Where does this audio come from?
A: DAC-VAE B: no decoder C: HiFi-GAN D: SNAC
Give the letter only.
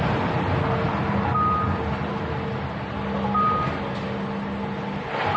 B